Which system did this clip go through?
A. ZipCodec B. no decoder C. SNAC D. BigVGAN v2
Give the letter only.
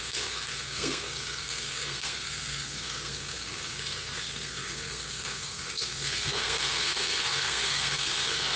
C